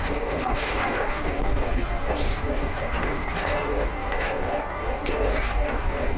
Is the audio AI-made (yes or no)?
yes